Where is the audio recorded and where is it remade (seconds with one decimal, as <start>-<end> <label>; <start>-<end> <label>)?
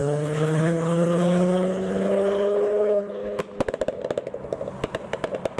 0.0-3.4 remade; 3.4-5.6 recorded